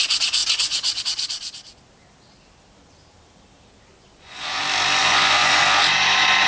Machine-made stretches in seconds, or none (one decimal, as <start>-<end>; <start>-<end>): 0.4-1.0; 3.9-4.6; 5.0-5.6

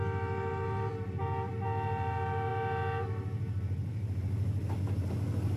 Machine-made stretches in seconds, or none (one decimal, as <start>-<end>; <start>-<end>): none

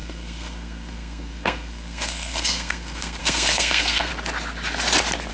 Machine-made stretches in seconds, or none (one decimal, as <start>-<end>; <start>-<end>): 0.0-4.1

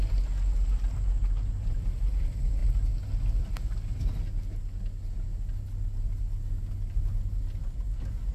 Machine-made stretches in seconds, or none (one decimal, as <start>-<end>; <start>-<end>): none

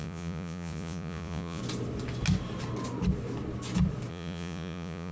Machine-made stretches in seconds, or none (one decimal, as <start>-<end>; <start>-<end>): 0.0-1.6; 4.1-5.1

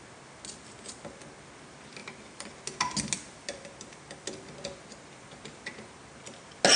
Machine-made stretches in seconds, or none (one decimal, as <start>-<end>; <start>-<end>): 2.0-2.5

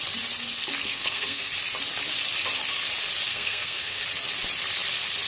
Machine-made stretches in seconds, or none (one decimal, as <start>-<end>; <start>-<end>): 0.9-1.5; 3.3-4.0

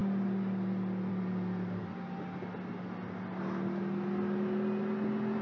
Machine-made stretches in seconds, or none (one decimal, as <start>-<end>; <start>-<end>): none